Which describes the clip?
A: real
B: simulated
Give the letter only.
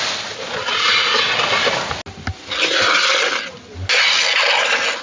A